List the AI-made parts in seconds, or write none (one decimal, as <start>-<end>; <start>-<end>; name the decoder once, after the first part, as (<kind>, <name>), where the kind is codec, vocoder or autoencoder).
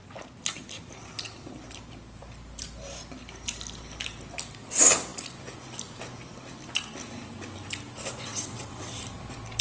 8.3-9.0 (vocoder, WaveNeXt)